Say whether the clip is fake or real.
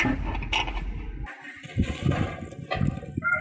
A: real